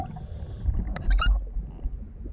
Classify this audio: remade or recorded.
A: recorded